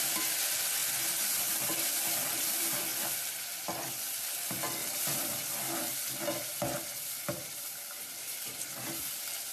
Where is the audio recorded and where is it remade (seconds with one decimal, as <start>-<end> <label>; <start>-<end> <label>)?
0.0-2.9 remade; 2.9-3.9 recorded; 3.9-9.5 remade